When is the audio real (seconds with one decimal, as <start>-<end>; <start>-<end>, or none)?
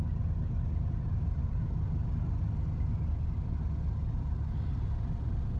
0.0-5.6